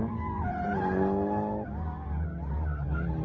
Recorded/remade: recorded